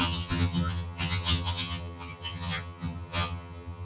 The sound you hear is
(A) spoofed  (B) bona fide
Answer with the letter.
A